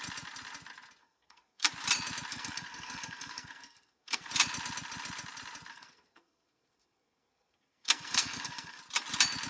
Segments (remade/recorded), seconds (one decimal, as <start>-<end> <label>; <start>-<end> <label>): 0.0-1.0 recorded; 1.0-1.7 remade; 1.7-2.3 recorded; 2.3-4.3 remade; 4.3-5.7 recorded; 5.7-8.8 remade; 8.8-9.5 recorded